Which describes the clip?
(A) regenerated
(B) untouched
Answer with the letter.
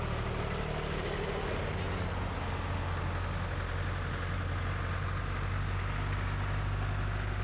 B